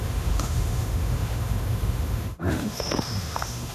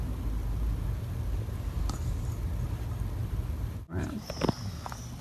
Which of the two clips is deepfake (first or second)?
first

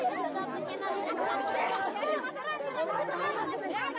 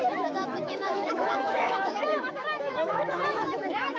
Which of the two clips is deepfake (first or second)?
second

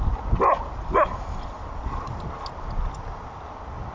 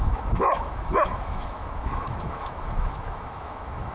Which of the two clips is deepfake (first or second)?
second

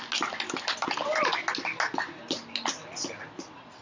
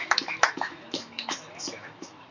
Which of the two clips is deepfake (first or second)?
second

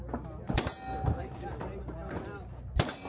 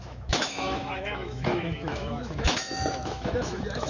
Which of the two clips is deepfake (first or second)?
second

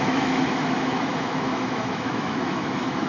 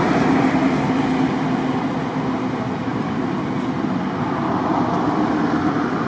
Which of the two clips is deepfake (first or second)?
first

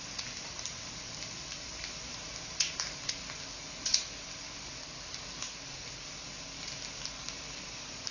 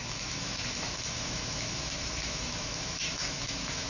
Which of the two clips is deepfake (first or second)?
second